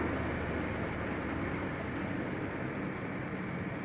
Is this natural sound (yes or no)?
yes